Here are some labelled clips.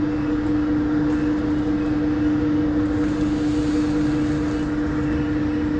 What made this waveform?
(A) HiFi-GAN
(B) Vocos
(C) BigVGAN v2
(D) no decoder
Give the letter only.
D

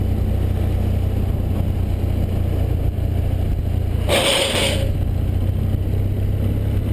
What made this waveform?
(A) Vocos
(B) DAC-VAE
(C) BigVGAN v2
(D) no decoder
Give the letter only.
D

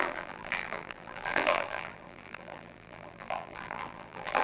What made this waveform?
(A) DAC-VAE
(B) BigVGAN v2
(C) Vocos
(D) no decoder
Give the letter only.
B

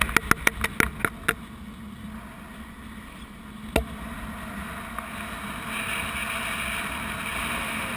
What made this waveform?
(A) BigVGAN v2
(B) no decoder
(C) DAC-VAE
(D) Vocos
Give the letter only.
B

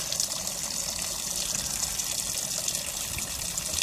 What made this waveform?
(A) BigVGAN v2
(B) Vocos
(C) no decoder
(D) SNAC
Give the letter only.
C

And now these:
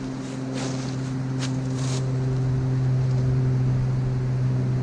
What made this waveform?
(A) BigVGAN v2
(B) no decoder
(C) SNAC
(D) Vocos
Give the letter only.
B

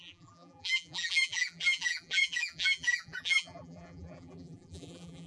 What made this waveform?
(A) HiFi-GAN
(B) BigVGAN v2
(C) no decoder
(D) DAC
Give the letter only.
B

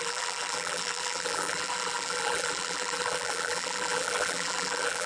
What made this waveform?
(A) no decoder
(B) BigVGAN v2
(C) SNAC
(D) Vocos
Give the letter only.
B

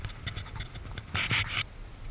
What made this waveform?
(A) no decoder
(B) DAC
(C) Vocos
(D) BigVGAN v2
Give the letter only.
A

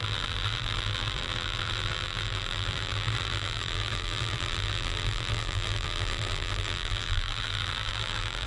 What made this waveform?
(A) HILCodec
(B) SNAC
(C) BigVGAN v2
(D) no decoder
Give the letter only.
C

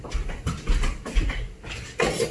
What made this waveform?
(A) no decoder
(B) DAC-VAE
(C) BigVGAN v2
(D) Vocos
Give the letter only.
A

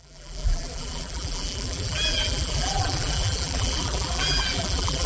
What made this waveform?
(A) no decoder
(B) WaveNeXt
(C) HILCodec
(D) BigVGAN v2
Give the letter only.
D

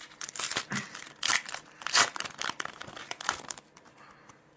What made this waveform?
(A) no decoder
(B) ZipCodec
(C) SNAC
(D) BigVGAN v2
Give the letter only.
D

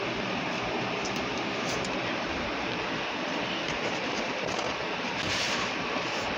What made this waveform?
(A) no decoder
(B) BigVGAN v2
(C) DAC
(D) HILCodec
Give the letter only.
B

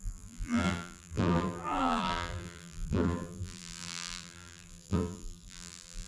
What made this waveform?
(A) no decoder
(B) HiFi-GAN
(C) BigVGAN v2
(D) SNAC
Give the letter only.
C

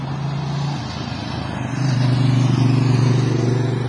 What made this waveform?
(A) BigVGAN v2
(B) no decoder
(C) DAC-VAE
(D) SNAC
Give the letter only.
B